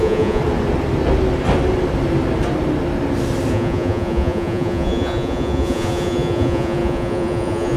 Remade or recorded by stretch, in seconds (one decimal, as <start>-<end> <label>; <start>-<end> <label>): 0.0-0.4 remade; 0.4-3.5 recorded; 3.5-7.8 remade